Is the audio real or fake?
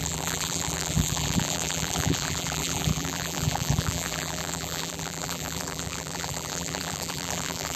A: fake